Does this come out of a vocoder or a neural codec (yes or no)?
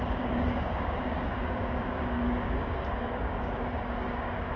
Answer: yes